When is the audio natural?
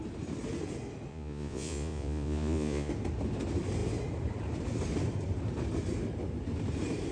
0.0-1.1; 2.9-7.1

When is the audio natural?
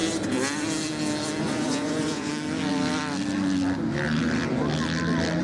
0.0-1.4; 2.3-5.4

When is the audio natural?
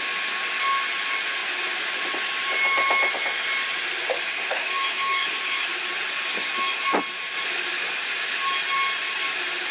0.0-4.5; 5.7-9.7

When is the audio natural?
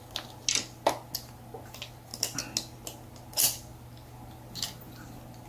0.0-5.5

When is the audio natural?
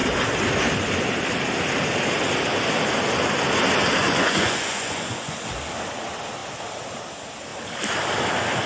0.0-4.0; 5.4-8.7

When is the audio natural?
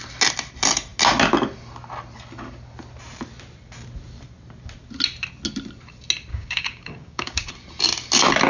0.0-6.3; 7.5-8.5